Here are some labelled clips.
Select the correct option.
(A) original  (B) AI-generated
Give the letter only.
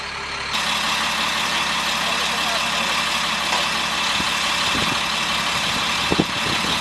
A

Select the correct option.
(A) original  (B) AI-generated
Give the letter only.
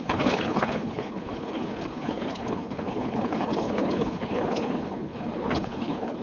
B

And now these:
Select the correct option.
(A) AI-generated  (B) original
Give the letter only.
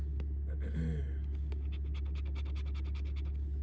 B